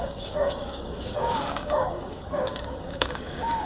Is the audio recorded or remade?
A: remade